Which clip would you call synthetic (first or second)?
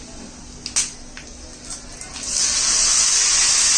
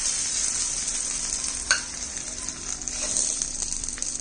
second